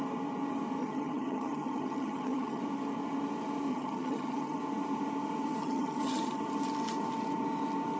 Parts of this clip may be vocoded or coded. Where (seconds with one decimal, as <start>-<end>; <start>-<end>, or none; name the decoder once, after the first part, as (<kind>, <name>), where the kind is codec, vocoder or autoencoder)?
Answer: 0.8-2.6 (vocoder, HiFi-GAN); 3.7-4.6; 5.6-6.4